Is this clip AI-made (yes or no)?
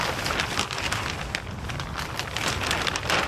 no